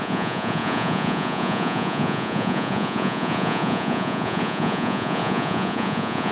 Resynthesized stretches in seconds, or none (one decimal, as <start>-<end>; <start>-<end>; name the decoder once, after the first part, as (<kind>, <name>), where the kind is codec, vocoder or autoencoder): 0.0-6.3 (vocoder, Vocos)